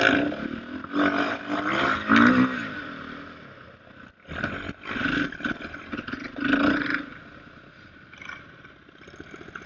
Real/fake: real